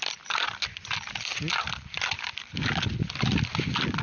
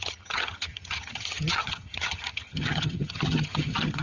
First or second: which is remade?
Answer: second